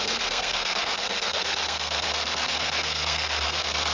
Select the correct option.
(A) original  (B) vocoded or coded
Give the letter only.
B